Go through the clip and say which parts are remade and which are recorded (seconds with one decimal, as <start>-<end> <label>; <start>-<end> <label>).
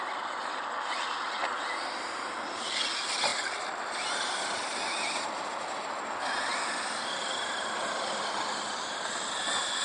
0.0-3.3 recorded; 3.3-3.8 remade; 3.8-9.8 recorded